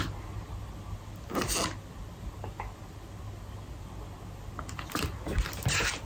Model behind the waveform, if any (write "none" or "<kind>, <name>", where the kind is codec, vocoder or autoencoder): none